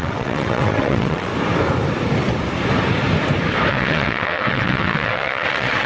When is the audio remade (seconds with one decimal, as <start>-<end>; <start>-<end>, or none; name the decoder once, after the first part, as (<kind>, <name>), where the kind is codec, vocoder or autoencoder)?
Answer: 0.0-1.3 (vocoder, WaveNeXt); 3.7-5.9